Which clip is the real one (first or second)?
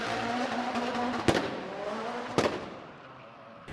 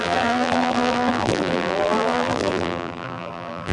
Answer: first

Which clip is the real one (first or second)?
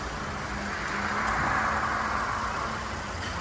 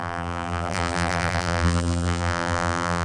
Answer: first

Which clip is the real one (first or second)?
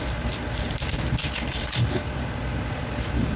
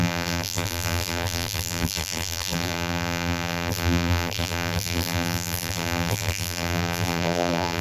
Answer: first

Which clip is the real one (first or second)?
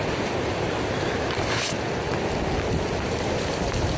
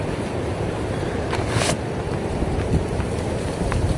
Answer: first